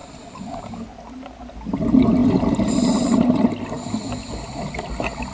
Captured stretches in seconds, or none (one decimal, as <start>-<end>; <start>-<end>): 0.0-5.3